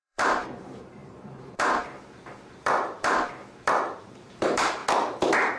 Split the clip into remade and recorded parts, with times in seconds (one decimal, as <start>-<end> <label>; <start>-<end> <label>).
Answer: 0.0-3.4 remade; 3.4-4.0 recorded; 4.0-4.8 remade; 4.8-5.6 recorded